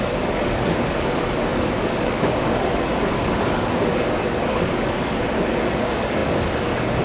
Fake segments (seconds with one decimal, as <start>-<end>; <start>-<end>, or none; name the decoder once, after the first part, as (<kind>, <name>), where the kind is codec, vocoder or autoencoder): 0.0-7.0 (codec, DAC)